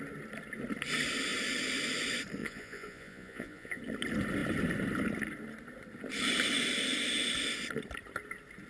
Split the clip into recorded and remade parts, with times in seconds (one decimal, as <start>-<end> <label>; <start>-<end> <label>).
0.0-2.4 recorded; 2.4-3.8 remade; 3.8-8.7 recorded